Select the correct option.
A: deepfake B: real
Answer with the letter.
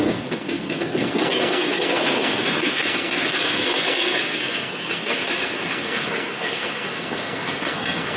A